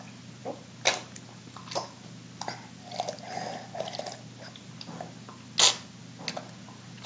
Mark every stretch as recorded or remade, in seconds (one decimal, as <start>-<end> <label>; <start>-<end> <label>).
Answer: 0.0-7.1 recorded